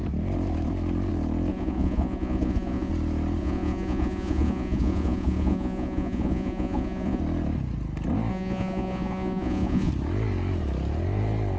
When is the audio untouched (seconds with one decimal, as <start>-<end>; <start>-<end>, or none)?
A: 0.0-1.5; 2.9-3.4; 7.2-8.3; 9.9-11.6